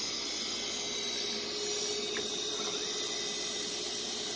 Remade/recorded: recorded